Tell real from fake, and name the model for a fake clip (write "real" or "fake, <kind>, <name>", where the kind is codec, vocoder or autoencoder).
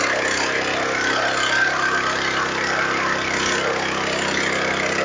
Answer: real